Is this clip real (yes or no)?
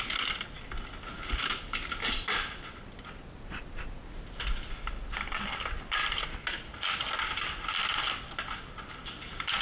yes